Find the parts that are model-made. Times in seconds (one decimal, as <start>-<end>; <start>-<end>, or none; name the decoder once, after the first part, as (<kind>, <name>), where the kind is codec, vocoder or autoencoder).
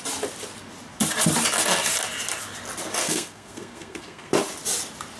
3.0-4.3 (codec, SNAC)